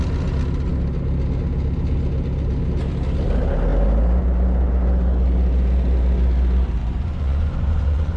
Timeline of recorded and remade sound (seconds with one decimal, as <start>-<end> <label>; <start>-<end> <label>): 0.0-6.8 recorded; 6.8-8.2 remade

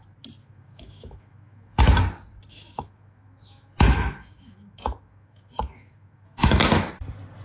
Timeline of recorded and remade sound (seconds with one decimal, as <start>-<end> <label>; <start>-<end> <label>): 0.0-0.4 recorded; 0.4-1.8 remade; 1.8-2.5 recorded; 2.5-6.9 remade; 6.9-7.4 recorded